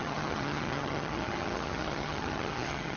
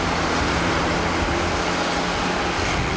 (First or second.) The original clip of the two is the second